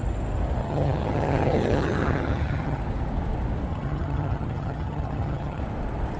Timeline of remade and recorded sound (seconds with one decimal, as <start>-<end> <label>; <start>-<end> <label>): 0.0-0.6 recorded; 0.6-2.8 remade; 2.8-3.7 recorded; 3.7-5.6 remade; 5.6-6.2 recorded